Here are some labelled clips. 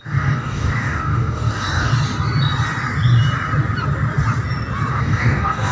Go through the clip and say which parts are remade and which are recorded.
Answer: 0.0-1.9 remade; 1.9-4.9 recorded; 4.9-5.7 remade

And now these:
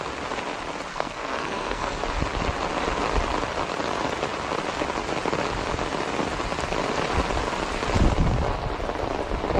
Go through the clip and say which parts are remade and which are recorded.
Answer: 0.0-0.9 recorded; 0.9-2.0 remade; 2.0-9.6 recorded

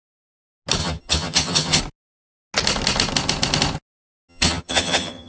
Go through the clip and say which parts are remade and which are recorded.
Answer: 0.0-0.8 recorded; 0.8-1.8 remade; 1.8-4.3 recorded; 4.3-5.3 remade

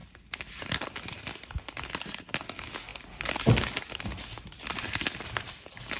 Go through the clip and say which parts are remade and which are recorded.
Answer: 0.0-6.0 recorded

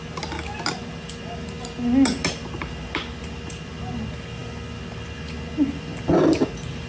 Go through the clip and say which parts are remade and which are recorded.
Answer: 0.0-6.9 recorded

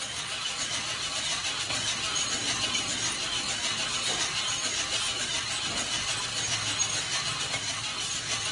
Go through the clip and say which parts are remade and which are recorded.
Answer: 0.0-8.5 recorded